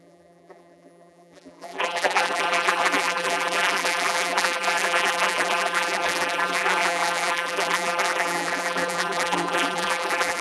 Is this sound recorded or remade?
remade